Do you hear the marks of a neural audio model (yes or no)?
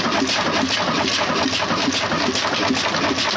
no